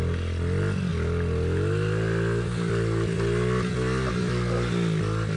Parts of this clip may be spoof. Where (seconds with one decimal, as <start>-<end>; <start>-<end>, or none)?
none